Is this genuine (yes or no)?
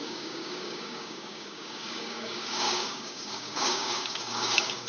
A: no